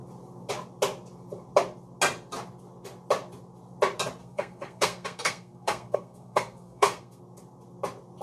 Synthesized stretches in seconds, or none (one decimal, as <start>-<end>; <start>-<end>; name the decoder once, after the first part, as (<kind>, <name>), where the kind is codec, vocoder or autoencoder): 4.2-7.2 (codec, SNAC)